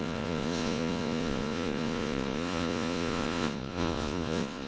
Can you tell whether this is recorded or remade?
remade